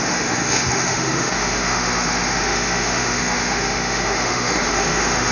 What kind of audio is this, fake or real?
fake